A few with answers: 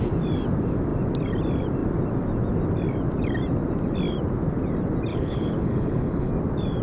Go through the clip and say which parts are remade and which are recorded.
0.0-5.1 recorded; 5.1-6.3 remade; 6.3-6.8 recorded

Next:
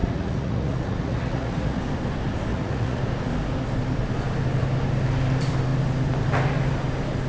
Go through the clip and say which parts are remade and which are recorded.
0.0-1.8 remade; 1.8-2.5 recorded; 2.5-3.0 remade; 3.0-7.3 recorded

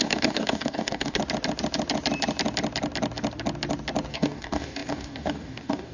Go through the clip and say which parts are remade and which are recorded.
0.0-1.2 remade; 1.2-4.1 recorded; 4.1-5.9 remade

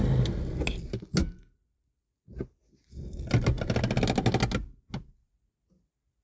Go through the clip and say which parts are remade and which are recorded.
0.0-6.2 recorded